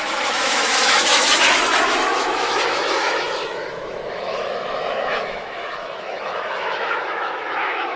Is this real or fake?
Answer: fake